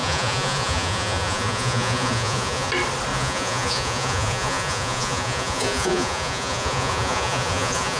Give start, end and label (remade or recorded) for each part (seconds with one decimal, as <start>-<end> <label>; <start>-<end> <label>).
0.0-2.7 remade; 2.7-3.1 recorded; 3.1-8.0 remade